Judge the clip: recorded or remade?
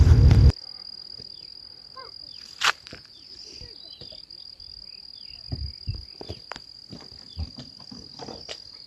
remade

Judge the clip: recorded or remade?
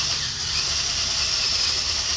remade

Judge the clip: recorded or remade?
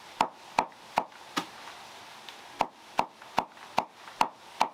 recorded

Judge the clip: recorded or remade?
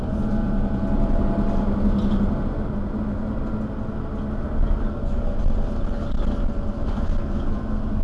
recorded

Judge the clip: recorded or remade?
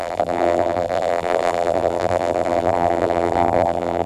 remade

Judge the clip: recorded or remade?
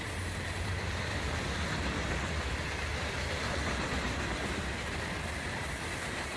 remade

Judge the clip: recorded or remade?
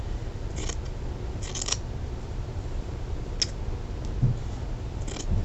recorded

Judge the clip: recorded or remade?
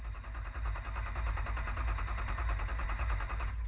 recorded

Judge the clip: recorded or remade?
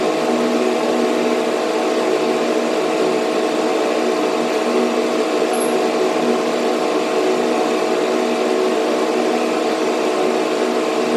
recorded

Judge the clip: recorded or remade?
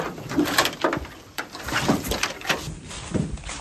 remade